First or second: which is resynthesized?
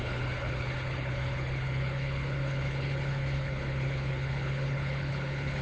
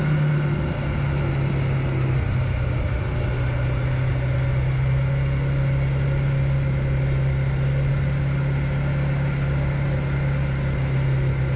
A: first